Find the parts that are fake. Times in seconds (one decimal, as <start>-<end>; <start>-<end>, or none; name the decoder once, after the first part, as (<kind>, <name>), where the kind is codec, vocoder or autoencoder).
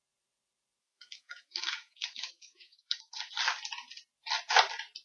0.8-3.3 (autoencoder, DAC-VAE)